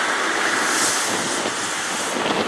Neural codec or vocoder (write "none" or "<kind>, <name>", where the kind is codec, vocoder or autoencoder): none